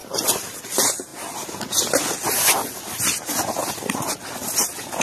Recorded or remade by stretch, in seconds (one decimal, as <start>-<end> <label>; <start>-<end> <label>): 0.0-0.6 remade; 0.6-5.0 recorded